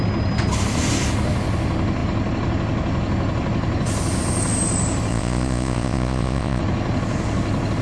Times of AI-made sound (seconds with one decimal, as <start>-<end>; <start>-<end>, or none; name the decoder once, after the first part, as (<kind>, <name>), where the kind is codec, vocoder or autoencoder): 5.1-6.6 (vocoder, Vocos)